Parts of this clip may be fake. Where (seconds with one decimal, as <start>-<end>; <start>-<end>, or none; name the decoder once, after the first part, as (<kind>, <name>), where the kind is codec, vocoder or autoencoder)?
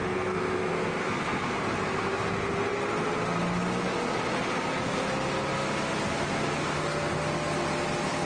0.0-1.6 (codec, SNAC)